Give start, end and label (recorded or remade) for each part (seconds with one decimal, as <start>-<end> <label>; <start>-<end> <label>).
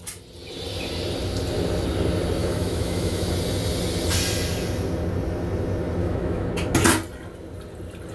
0.0-2.4 recorded; 2.4-3.3 remade; 3.3-6.0 recorded; 6.0-6.5 remade; 6.5-8.1 recorded